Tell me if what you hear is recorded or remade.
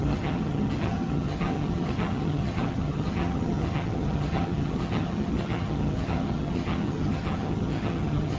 remade